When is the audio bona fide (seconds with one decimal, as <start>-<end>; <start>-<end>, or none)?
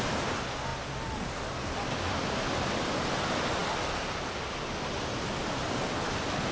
0.0-6.5